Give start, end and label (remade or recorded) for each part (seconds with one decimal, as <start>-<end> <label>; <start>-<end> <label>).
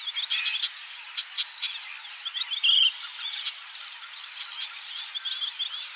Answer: 0.0-6.0 recorded